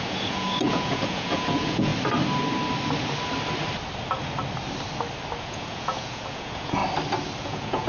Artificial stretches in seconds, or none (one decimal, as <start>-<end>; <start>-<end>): 0.0-1.9; 5.4-6.8; 7.4-7.9